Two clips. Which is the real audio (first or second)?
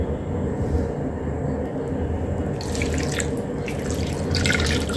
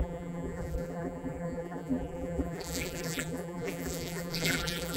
first